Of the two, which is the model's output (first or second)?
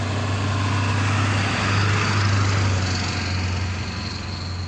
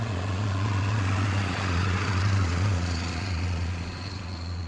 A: second